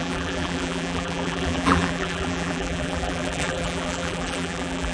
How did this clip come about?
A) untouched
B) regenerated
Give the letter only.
B